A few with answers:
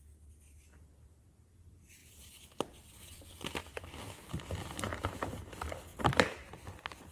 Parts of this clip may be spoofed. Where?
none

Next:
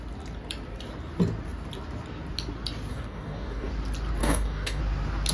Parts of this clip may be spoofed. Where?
2.9-3.7 (codec, DAC); 4.2-4.8

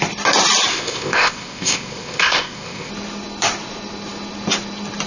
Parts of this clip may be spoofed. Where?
0.7-2.9 (codec, ZipCodec)

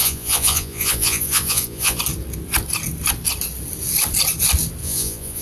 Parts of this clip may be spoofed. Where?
0.0-2.0 (vocoder, Vocos); 4.8-5.4

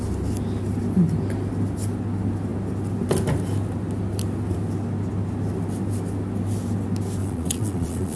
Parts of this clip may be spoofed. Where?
7.2-8.2 (vocoder, Vocos)

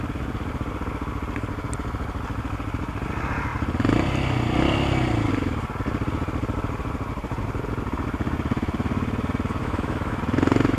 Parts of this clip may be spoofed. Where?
9.6-10.2 (autoencoder, DAC-VAE)

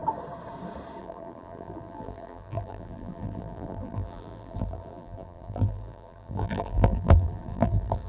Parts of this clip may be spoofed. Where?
1.0-8.1 (vocoder, BigVGAN v2)